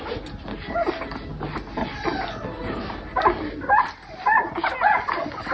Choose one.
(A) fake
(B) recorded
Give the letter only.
B